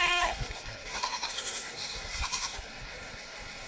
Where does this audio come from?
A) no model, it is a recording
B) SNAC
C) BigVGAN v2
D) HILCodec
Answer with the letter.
B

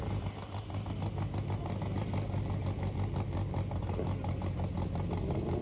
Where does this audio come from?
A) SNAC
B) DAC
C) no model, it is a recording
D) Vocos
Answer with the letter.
C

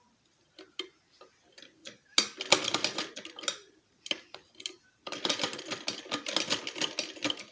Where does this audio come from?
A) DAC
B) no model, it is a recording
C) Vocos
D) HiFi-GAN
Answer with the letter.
B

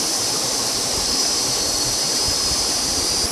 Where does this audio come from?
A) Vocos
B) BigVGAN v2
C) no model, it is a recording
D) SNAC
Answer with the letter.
B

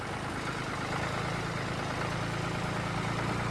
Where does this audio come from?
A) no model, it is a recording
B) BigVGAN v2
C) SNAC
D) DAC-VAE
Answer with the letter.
A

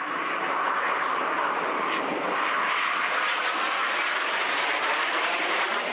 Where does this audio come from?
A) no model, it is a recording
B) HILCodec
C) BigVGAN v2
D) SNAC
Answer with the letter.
A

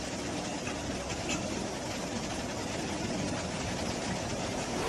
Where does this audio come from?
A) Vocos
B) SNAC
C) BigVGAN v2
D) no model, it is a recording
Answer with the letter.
D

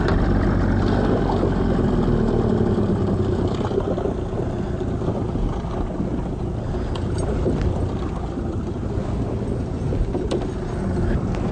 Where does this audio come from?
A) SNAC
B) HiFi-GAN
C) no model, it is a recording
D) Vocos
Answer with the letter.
C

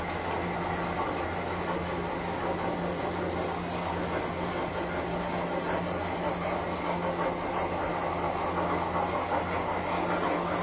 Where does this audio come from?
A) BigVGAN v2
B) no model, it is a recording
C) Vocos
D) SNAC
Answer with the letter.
B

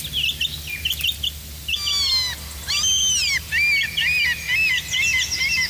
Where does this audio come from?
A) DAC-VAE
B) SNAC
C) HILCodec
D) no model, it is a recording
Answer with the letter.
D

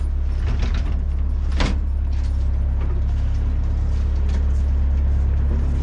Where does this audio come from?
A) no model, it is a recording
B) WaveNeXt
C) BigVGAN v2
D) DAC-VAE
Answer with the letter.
A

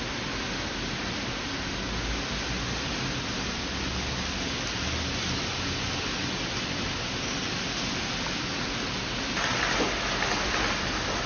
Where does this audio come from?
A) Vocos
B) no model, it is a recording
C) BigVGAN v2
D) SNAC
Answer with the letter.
B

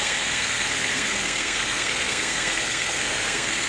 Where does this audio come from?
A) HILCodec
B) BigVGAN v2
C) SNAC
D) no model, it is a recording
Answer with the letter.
C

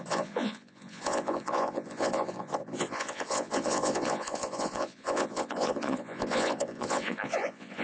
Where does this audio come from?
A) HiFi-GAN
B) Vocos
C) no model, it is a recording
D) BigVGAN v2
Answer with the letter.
B